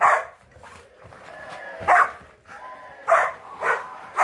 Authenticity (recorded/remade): remade